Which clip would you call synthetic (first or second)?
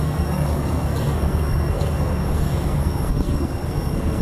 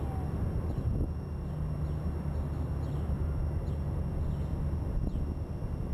first